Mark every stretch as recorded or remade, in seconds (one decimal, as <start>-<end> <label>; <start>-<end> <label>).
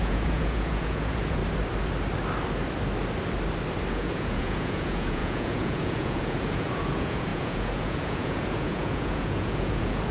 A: 0.0-1.4 remade; 1.4-3.9 recorded; 3.9-10.1 remade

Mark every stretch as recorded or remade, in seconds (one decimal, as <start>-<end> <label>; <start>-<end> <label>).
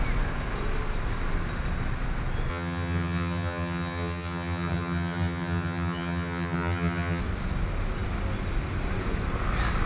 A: 0.0-2.5 recorded; 2.5-7.2 remade; 7.2-9.9 recorded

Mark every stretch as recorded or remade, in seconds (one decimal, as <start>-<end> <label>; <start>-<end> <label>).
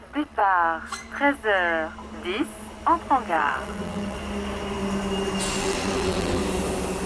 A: 0.0-0.4 remade; 0.4-3.3 recorded; 3.3-4.2 remade; 4.2-5.6 recorded; 5.6-6.4 remade; 6.4-7.1 recorded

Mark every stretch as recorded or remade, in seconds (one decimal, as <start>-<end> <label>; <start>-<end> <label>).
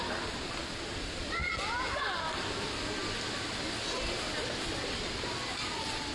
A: 0.0-6.1 recorded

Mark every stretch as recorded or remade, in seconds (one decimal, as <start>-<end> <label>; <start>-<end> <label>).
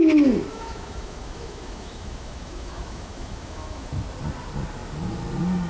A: 0.0-0.5 recorded; 0.5-3.9 remade; 3.9-5.7 recorded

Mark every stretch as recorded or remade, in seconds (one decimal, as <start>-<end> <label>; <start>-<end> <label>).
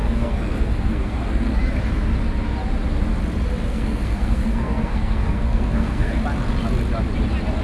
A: 0.0-1.6 remade; 1.6-3.7 recorded; 3.7-6.1 remade; 6.1-7.6 recorded